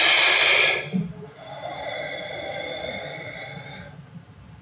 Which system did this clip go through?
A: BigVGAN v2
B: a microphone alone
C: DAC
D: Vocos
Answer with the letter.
A